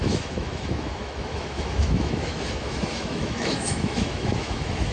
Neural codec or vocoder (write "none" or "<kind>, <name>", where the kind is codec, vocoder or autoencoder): autoencoder, DAC-VAE